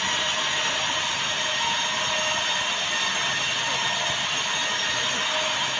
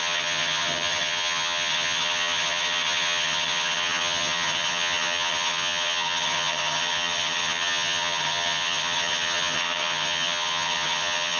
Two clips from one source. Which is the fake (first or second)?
second